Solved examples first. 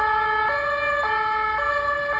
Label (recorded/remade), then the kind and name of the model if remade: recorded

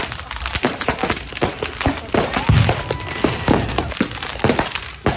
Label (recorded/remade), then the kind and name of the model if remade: recorded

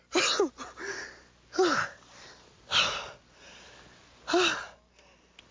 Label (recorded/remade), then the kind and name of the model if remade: recorded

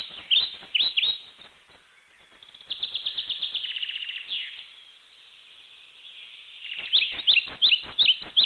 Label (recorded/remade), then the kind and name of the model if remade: recorded